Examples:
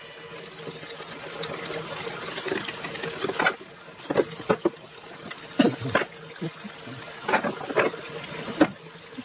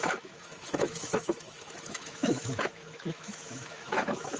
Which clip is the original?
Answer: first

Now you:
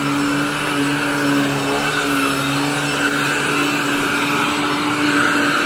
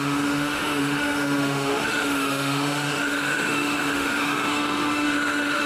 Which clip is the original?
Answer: first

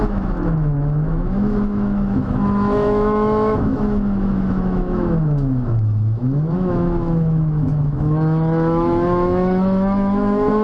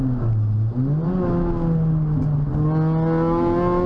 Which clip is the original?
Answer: second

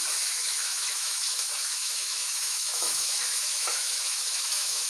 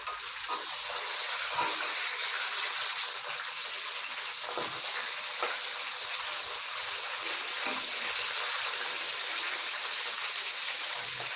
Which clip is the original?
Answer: second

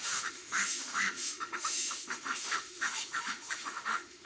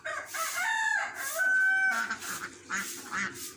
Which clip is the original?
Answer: second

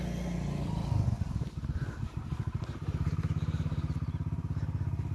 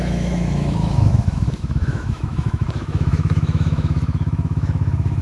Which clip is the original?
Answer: first